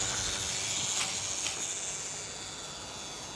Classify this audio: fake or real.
real